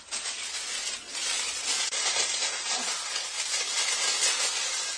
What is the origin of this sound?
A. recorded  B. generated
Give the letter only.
A